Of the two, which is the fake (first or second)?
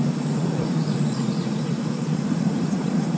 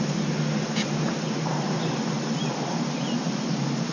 first